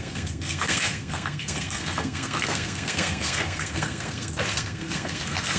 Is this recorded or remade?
remade